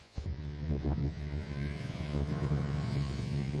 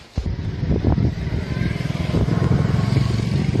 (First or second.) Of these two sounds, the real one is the second